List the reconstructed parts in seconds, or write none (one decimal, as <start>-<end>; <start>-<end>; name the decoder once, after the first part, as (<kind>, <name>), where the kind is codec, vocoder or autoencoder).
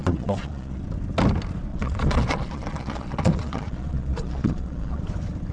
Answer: 0.0-0.8 (vocoder, Vocos); 1.7-5.0